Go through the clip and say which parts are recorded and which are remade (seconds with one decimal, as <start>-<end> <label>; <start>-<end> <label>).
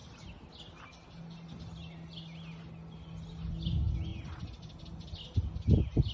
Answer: 0.0-6.1 recorded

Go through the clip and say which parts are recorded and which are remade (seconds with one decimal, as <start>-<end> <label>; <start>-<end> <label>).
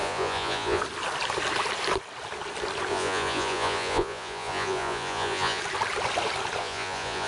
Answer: 0.0-0.8 remade; 0.8-2.9 recorded; 2.9-5.6 remade; 5.6-6.6 recorded; 6.6-7.3 remade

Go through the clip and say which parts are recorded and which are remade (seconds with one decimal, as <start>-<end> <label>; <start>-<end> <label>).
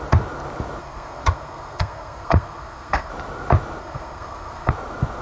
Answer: 0.0-0.8 recorded; 0.8-3.1 remade; 3.1-3.8 recorded; 3.8-4.7 remade; 4.7-5.2 recorded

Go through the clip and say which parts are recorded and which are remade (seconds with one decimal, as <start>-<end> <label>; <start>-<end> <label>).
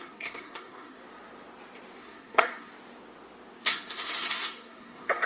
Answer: 0.0-1.0 remade; 1.0-2.0 recorded; 2.0-2.7 remade; 2.7-3.6 recorded; 3.6-5.3 remade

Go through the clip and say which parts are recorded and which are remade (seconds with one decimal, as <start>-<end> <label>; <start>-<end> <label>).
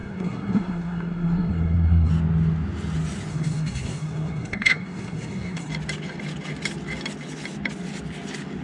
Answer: 0.0-2.1 remade; 2.1-3.3 recorded; 3.3-5.7 remade; 5.7-8.6 recorded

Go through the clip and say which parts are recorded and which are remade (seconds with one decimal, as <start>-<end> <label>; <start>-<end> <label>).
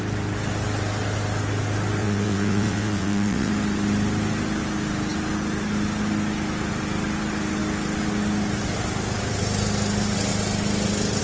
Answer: 0.0-2.0 recorded; 2.0-3.5 remade; 3.5-11.2 recorded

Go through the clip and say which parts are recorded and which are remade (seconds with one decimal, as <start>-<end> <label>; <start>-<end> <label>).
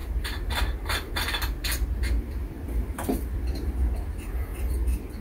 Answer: 0.0-1.1 remade; 1.1-2.4 recorded; 2.4-3.8 remade; 3.8-5.2 recorded